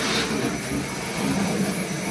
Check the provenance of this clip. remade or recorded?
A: recorded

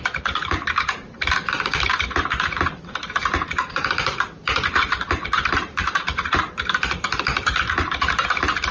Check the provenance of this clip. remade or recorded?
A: remade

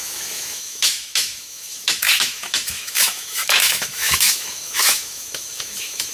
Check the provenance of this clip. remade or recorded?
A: remade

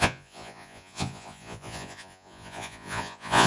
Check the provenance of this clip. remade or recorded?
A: remade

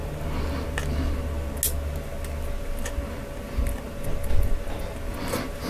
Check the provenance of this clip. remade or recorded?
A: recorded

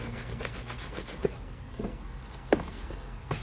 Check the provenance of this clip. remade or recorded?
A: remade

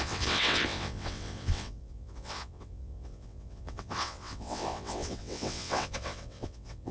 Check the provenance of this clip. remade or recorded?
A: remade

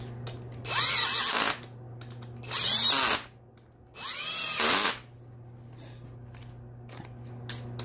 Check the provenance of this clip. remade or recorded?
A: recorded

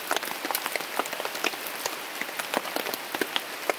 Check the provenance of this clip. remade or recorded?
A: recorded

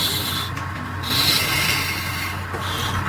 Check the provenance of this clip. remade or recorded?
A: recorded